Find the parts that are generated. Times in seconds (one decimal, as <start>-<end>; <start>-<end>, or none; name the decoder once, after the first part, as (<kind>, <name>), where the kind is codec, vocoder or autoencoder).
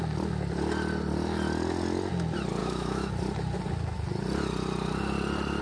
2.6-3.1 (autoencoder, DAC-VAE)